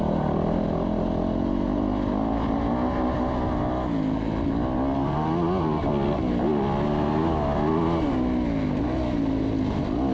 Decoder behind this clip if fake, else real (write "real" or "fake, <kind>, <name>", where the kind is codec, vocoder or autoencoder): real